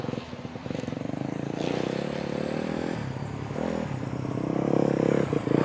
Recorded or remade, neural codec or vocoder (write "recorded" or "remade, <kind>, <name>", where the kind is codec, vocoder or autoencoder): recorded